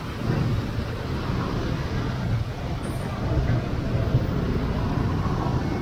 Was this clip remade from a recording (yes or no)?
no